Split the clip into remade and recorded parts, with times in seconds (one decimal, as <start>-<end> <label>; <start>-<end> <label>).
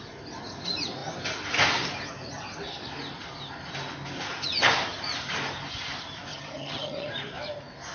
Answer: 0.0-6.3 recorded; 6.3-7.1 remade; 7.1-7.9 recorded